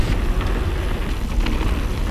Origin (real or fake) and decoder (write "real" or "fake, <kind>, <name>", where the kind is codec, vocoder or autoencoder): real